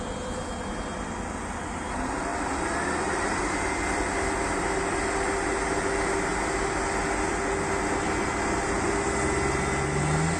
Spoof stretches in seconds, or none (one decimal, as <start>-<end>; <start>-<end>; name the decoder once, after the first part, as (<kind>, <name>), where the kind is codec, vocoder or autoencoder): none